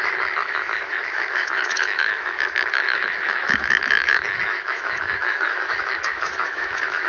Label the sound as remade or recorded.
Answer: remade